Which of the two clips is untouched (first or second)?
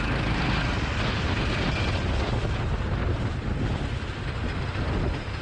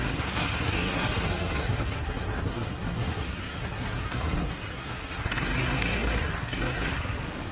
first